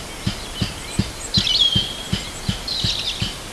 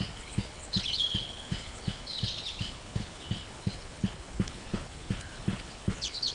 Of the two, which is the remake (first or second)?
second